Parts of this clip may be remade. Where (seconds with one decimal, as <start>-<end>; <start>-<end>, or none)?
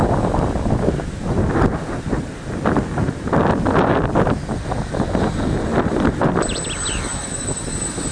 none